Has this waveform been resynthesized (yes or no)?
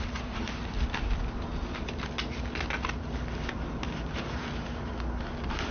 no